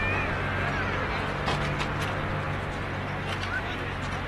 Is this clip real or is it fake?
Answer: real